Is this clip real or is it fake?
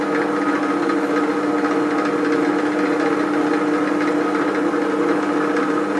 real